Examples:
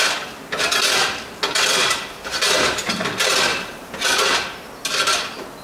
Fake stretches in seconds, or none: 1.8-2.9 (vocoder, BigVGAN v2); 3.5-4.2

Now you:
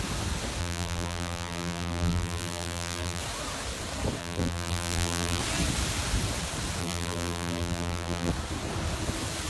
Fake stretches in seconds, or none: 0.6-3.2 (vocoder, BigVGAN v2); 4.2-5.4; 6.8-8.3

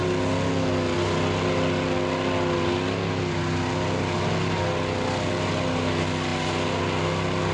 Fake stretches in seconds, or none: 6.3-6.8 (vocoder, BigVGAN v2)

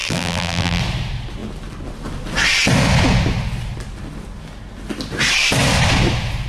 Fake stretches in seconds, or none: 0.0-0.8 (vocoder, BigVGAN v2)

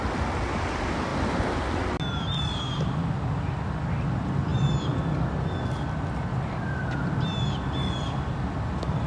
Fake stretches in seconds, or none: none

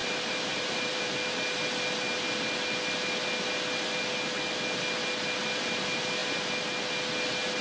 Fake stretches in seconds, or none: 0.0-1.0 (vocoder, BigVGAN v2)